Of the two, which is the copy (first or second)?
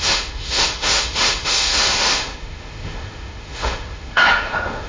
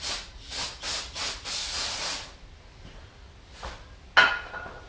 first